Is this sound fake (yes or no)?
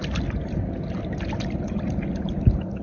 no